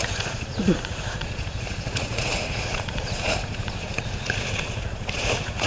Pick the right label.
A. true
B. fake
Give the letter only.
B